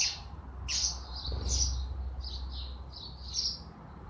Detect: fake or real real